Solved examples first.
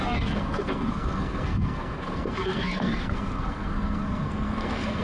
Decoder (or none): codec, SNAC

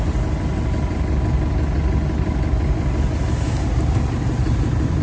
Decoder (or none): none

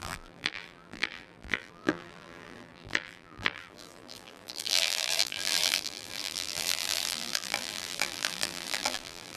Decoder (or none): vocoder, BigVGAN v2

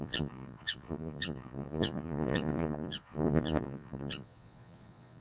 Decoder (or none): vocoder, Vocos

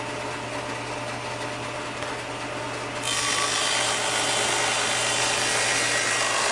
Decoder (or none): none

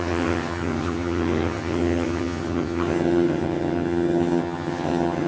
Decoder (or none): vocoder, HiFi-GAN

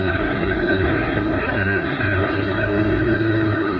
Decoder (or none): codec, SNAC